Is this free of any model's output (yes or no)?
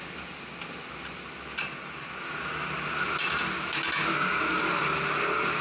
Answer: yes